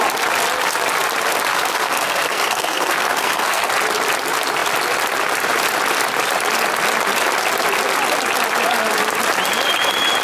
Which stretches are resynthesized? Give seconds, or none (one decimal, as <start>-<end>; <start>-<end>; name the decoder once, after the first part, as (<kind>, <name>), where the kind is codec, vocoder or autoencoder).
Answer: 1.5-3.7 (codec, SNAC)